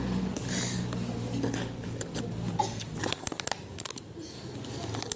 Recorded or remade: recorded